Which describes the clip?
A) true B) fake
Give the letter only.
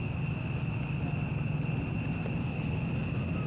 A